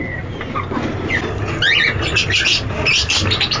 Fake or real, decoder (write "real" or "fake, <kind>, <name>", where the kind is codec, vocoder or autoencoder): real